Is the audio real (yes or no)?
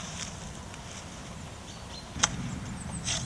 no